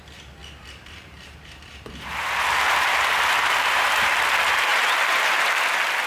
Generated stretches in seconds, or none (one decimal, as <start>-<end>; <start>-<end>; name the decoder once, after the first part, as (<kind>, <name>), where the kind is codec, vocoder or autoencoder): 0.4-4.1 (vocoder, BigVGAN v2); 4.7-5.3